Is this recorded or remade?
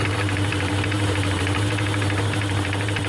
remade